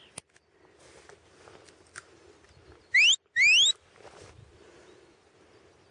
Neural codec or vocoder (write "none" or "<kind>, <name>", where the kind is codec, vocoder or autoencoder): none